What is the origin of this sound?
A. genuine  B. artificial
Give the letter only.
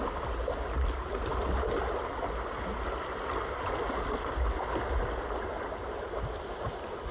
A